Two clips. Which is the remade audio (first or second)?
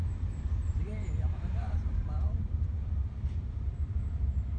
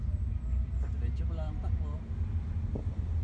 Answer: first